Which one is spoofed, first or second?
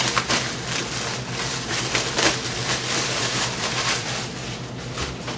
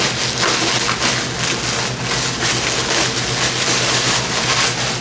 first